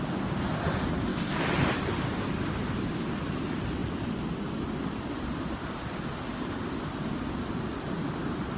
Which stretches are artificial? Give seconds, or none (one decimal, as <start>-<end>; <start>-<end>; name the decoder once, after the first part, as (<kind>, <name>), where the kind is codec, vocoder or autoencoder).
none